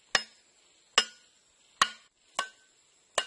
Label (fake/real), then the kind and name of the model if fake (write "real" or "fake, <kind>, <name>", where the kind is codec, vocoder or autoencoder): real